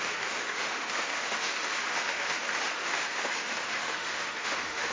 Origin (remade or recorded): remade